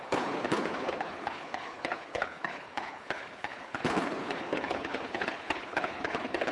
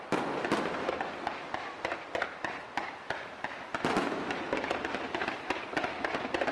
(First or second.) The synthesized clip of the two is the first